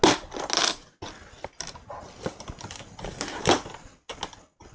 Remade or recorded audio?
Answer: recorded